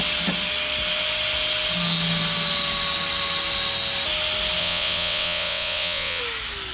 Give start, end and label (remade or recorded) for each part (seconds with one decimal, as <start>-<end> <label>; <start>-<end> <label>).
0.0-4.6 recorded; 4.6-6.2 remade; 6.2-6.7 recorded